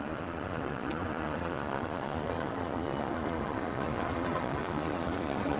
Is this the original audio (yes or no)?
no